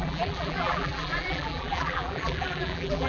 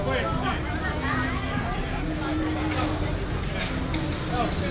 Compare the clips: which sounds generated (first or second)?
first